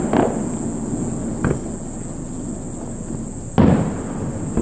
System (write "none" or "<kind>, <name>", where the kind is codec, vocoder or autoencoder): none